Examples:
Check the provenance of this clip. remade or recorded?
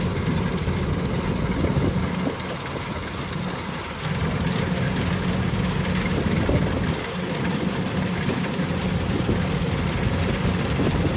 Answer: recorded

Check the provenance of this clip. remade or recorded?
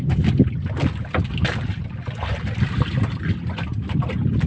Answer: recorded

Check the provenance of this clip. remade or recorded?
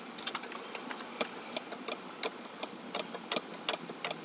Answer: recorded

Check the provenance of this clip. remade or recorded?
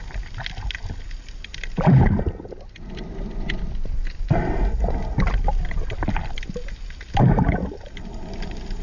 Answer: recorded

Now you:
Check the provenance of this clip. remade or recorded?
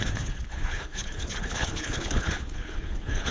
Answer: remade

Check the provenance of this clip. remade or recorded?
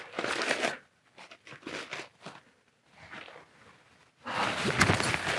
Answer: recorded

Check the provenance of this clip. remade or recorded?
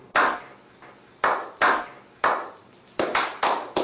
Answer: recorded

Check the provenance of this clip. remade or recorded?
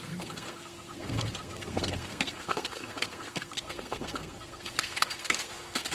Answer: remade